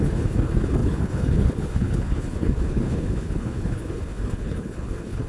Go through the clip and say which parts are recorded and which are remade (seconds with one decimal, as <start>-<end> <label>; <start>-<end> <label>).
0.0-5.3 remade